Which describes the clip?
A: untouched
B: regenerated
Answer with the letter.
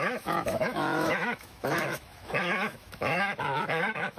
B